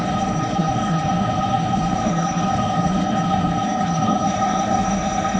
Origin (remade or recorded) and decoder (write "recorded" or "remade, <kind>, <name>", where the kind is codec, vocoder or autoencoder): remade, codec, SNAC